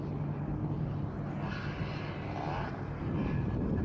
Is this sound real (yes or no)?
yes